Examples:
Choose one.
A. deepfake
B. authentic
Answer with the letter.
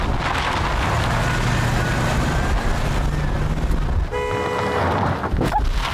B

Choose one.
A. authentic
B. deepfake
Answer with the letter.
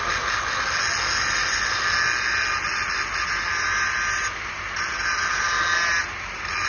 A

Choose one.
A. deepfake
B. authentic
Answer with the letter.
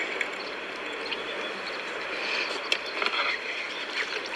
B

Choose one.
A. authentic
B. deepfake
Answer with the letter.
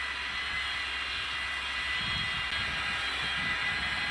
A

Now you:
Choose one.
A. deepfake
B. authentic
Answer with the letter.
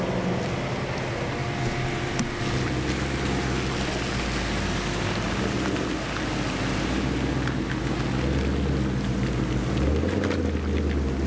B